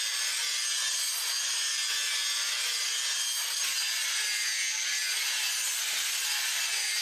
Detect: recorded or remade recorded